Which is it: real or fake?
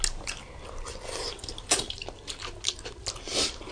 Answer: real